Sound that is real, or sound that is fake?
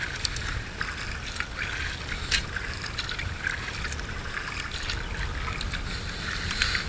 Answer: real